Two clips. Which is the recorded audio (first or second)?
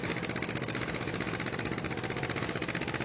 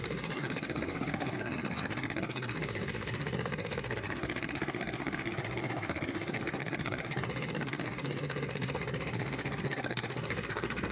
first